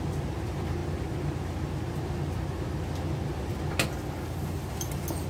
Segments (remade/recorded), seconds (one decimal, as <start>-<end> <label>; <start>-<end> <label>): 0.0-5.3 recorded